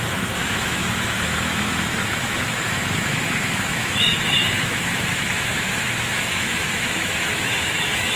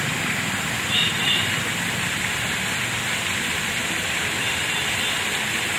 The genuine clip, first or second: second